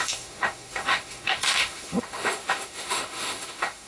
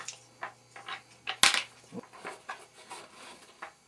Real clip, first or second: second